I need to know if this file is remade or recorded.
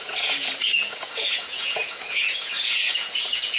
remade